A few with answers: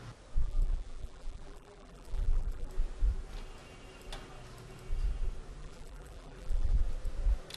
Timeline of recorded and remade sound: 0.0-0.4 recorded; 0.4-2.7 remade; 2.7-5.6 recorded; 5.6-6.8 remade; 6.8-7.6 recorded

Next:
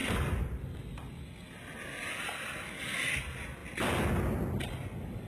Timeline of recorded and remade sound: 0.0-5.3 recorded

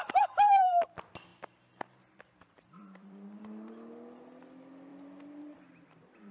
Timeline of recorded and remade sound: 0.0-6.3 remade

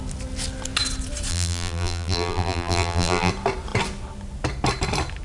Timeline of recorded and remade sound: 0.0-1.3 recorded; 1.3-3.3 remade; 3.3-5.2 recorded

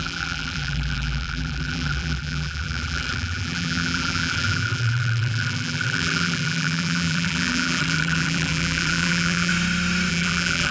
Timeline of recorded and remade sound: 0.0-9.5 remade; 9.5-10.1 recorded; 10.1-10.7 remade

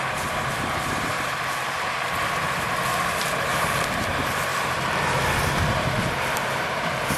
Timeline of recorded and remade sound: 0.0-4.5 remade; 4.5-5.4 recorded; 5.4-7.2 remade